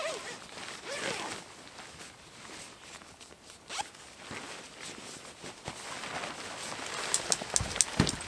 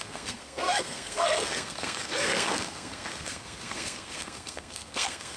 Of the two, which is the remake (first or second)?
second